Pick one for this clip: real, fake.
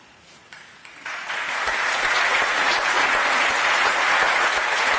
fake